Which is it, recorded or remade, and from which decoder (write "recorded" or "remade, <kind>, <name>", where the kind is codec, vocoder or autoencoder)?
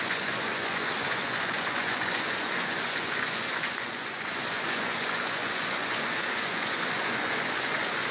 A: remade, vocoder, Vocos